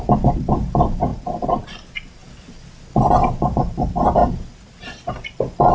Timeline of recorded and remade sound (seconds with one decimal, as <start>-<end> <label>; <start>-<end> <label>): 0.0-5.7 recorded